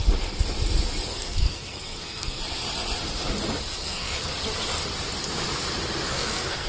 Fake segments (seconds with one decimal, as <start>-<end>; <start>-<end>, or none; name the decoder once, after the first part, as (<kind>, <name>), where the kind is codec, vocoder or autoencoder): 1.1-2.4 (codec, SNAC); 3.8-4.3; 6.1-6.7